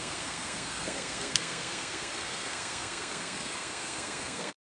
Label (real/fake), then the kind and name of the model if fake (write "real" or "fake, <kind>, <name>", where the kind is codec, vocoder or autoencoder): fake, codec, SNAC